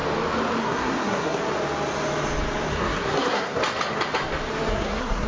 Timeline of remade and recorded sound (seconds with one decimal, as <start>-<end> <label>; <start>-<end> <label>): 0.0-0.6 recorded; 0.6-1.4 remade; 1.4-2.7 recorded; 2.7-3.6 remade; 3.6-4.7 recorded; 4.7-5.3 remade

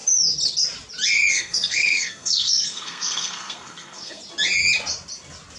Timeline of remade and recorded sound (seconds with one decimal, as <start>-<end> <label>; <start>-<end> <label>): 0.0-1.3 recorded; 1.3-4.2 remade; 4.2-5.6 recorded

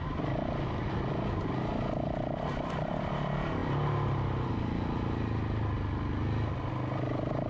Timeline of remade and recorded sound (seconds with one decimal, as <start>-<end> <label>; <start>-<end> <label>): 0.0-7.5 recorded

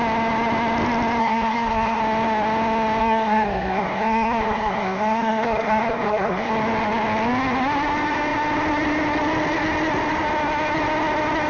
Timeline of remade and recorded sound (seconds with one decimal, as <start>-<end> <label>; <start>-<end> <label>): 0.0-1.2 recorded; 1.2-2.0 remade; 2.0-3.0 recorded; 3.0-6.5 remade; 6.5-11.5 recorded

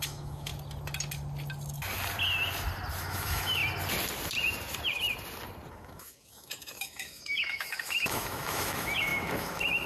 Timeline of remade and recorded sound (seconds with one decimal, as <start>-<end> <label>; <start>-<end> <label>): 0.0-0.5 remade; 0.5-3.0 recorded; 3.0-3.6 remade; 3.6-5.7 recorded; 5.7-9.9 remade

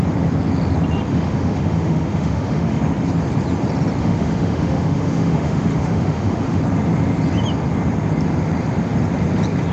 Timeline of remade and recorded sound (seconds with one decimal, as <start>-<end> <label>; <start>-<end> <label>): 0.0-1.1 recorded; 1.1-2.8 remade; 2.8-4.0 recorded; 4.0-6.6 remade; 6.6-9.7 recorded

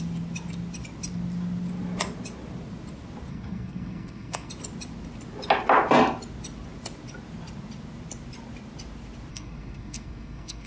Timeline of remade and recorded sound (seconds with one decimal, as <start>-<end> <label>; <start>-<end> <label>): 0.0-3.3 recorded; 3.3-4.5 remade; 4.5-9.3 recorded; 9.3-10.7 remade

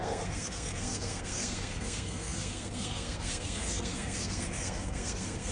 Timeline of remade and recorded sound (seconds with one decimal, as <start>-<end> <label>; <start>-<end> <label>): 0.0-5.5 remade